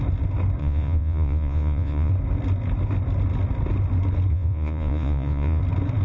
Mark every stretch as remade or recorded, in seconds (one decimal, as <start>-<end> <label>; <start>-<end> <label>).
0.0-0.6 recorded; 0.6-2.1 remade; 2.1-4.3 recorded; 4.3-5.6 remade; 5.6-6.0 recorded